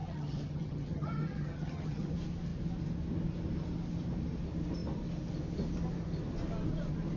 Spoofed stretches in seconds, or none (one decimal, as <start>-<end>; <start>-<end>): 0.0-2.1